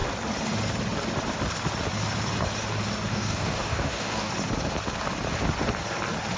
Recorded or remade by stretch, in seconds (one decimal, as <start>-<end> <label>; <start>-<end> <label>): 0.0-3.1 recorded; 3.1-4.3 remade; 4.3-6.4 recorded